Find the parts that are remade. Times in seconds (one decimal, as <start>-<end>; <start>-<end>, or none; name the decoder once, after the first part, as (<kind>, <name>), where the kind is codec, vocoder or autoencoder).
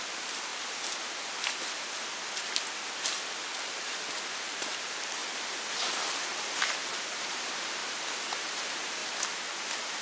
0.0-0.5 (vocoder, BigVGAN v2); 3.4-5.2; 6.0-9.0; 9.6-10.0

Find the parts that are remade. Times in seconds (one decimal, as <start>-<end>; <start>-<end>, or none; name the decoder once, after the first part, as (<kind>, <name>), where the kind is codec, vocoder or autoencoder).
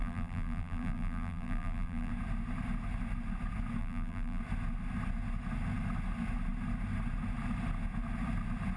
0.0-2.1 (vocoder, BigVGAN v2); 3.8-4.4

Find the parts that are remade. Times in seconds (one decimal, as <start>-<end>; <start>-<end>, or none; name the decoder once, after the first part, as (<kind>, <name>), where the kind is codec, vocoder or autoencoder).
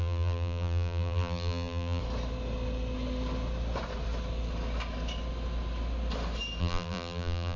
0.0-2.0 (vocoder, BigVGAN v2); 6.6-7.6